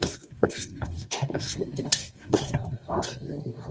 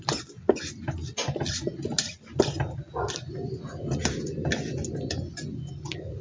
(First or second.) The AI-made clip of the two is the first